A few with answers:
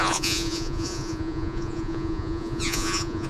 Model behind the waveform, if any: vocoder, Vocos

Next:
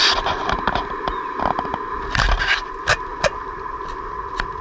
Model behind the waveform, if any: none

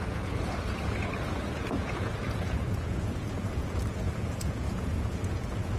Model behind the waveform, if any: vocoder, Vocos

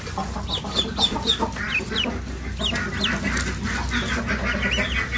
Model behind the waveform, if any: none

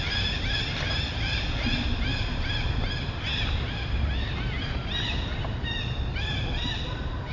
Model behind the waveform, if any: none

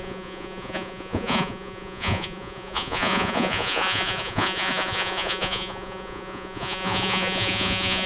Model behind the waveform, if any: vocoder, Vocos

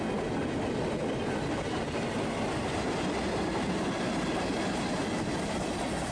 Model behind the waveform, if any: none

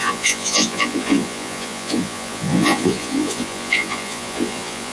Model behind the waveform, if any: vocoder, Vocos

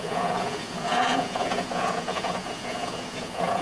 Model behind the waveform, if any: vocoder, Vocos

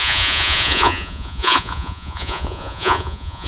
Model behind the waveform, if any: vocoder, Vocos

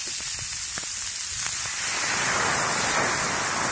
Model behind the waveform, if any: none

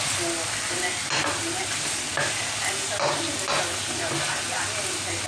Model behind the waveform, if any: none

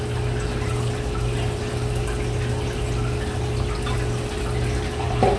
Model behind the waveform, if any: none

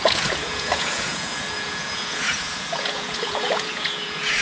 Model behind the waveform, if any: vocoder, Vocos